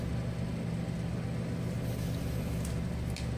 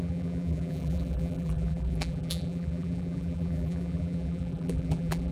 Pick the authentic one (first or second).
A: first